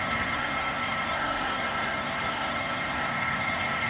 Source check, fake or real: fake